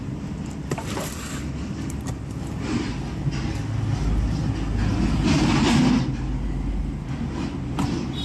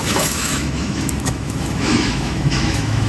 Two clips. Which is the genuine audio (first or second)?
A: first